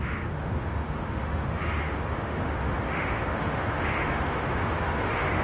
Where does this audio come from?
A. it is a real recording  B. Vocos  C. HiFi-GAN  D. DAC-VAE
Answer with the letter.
D